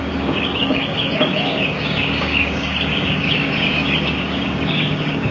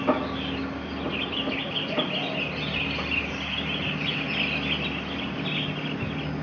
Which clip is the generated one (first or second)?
first